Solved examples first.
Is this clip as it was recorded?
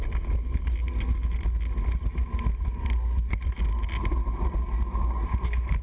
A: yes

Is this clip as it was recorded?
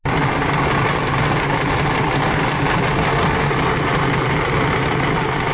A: yes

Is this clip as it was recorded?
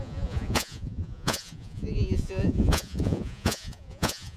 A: no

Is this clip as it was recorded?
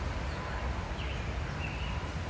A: yes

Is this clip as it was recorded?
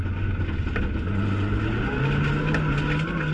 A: yes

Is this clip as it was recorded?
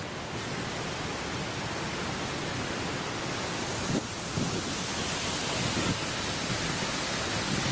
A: yes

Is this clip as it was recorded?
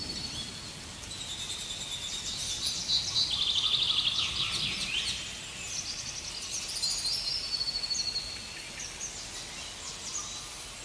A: yes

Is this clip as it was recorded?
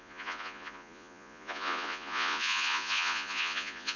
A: no